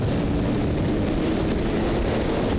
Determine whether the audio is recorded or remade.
recorded